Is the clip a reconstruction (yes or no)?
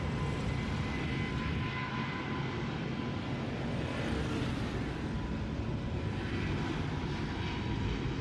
no